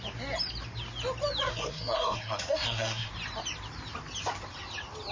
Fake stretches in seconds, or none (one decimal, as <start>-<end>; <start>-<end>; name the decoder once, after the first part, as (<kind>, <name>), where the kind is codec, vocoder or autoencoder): 1.5-3.1 (codec, SNAC)